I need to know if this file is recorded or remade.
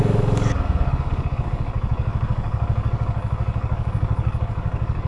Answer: remade